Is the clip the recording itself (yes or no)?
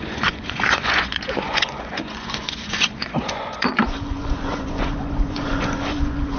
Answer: no